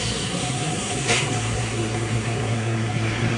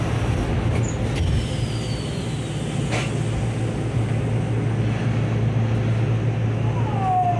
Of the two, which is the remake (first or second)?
first